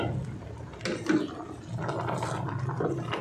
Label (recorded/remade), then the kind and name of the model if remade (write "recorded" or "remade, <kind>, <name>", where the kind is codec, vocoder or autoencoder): recorded